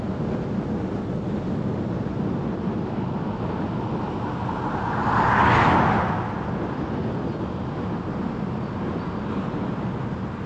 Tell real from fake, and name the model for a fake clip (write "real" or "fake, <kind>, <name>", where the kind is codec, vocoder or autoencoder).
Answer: real